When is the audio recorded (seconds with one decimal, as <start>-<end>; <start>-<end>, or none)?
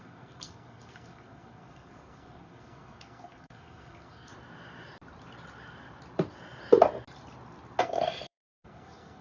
4.3-7.8